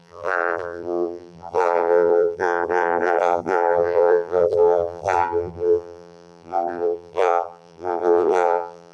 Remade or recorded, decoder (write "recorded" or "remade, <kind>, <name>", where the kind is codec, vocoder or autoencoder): remade, vocoder, BigVGAN v2